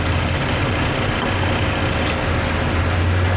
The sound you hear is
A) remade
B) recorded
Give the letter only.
B